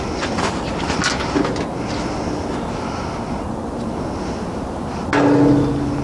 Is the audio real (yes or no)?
yes